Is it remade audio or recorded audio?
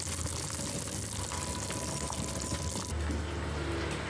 recorded